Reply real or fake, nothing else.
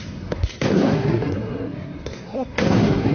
fake